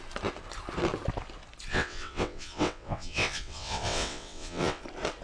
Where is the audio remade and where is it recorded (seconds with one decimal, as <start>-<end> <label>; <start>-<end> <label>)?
0.0-1.7 recorded; 1.7-4.8 remade; 4.8-5.2 recorded